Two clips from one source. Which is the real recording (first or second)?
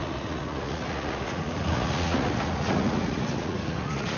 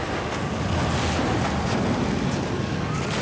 second